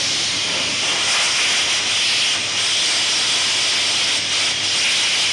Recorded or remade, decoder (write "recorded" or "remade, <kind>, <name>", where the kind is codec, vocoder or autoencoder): recorded